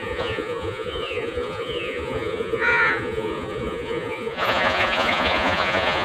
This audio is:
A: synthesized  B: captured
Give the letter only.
A